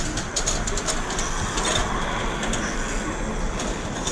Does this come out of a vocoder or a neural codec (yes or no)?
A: no